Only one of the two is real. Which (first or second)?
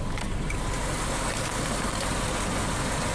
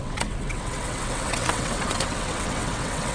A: first